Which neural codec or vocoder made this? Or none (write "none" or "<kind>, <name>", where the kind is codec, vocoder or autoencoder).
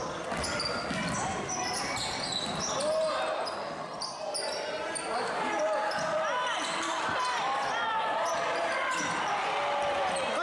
none